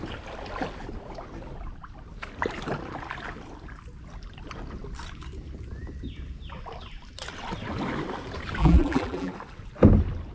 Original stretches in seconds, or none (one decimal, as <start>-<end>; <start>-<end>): 0.0-8.6; 9.3-10.3